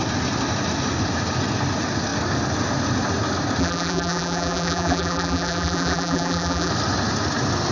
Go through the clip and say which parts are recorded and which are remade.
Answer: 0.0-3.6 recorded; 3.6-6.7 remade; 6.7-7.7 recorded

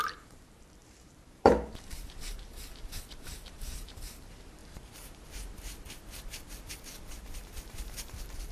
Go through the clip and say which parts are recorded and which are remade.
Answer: 0.0-8.5 remade

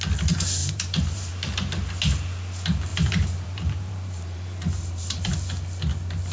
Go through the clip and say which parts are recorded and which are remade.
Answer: 0.0-0.6 recorded; 0.6-1.3 remade; 1.3-2.9 recorded; 2.9-5.3 remade; 5.3-6.3 recorded

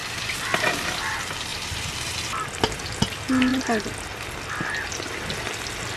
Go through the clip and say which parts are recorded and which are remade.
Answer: 0.0-1.1 remade; 1.1-1.5 recorded; 1.5-2.2 remade; 2.2-3.5 recorded; 3.5-4.0 remade; 4.0-6.0 recorded